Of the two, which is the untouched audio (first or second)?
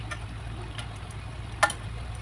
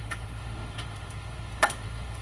first